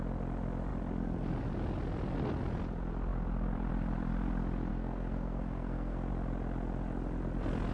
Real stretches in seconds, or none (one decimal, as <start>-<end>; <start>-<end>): 0.0-4.7; 6.1-7.7